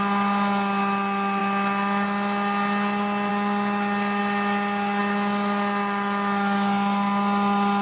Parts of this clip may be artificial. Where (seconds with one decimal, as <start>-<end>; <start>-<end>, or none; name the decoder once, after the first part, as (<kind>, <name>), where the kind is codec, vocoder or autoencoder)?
none